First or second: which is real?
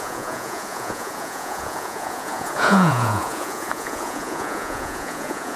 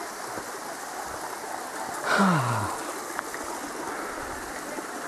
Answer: second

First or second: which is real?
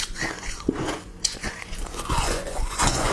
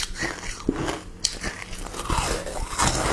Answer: second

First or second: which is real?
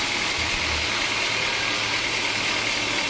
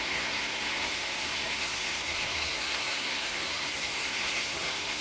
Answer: first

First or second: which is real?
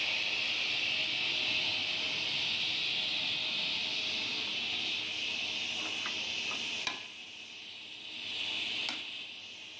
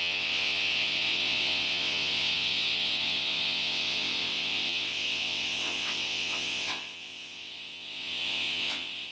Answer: first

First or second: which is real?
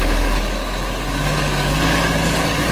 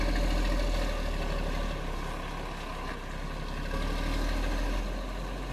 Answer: second